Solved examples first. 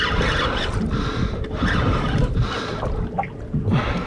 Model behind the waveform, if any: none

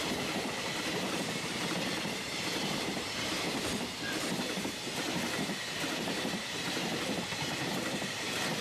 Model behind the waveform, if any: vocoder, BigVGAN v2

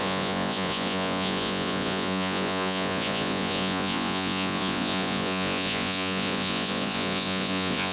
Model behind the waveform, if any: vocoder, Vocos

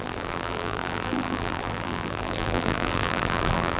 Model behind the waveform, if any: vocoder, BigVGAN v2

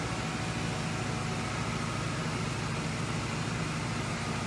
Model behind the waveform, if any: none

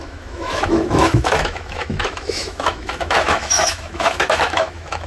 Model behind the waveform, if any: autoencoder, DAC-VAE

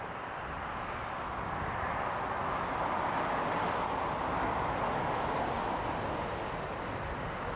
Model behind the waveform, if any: none